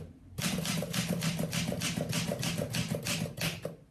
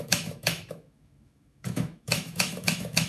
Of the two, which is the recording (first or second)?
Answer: first